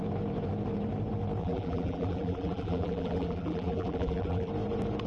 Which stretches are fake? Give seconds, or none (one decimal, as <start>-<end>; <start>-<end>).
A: 1.4-4.5